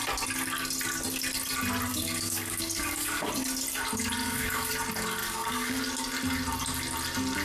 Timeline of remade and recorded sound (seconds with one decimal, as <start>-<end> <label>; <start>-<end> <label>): 0.0-1.9 recorded; 1.9-3.3 remade; 3.3-4.2 recorded; 4.2-4.7 remade; 4.7-5.2 recorded; 5.2-5.8 remade; 5.8-7.4 recorded